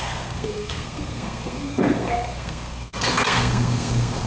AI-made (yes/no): yes